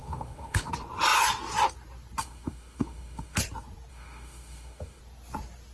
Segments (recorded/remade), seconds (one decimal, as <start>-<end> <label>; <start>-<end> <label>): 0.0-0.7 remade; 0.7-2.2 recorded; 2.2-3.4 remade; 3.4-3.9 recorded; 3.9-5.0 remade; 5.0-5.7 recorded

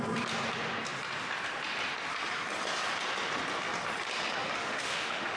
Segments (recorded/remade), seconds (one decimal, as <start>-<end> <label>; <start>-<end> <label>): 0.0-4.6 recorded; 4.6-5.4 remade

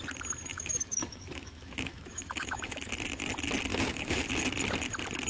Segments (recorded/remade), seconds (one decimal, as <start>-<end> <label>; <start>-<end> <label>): 0.0-0.5 recorded; 0.5-2.9 remade; 2.9-3.7 recorded; 3.7-4.3 remade; 4.3-5.3 recorded

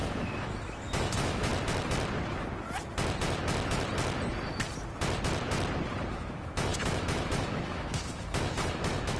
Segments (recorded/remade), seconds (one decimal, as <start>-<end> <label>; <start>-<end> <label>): 0.0-1.5 remade; 1.5-6.1 recorded; 6.1-9.2 remade

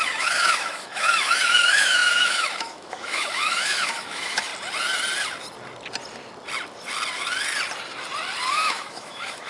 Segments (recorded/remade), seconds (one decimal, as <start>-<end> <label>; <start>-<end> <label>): 0.0-4.5 remade; 4.5-8.5 recorded; 8.5-9.5 remade

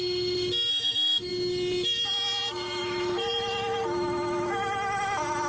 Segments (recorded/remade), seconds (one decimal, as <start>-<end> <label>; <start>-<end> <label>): 0.0-0.7 recorded; 0.7-1.3 remade; 1.3-2.8 recorded; 2.8-5.0 remade; 5.0-5.5 recorded